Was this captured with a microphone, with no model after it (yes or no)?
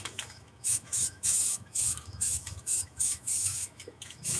no